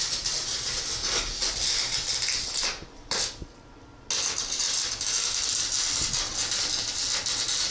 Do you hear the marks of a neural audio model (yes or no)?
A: no